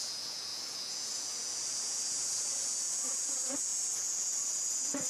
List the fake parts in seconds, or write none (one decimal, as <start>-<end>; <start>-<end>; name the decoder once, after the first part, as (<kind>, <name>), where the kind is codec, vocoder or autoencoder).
0.0-5.1 (vocoder, Vocos)